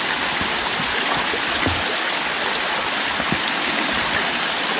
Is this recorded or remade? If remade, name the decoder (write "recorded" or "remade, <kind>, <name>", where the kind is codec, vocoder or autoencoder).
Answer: recorded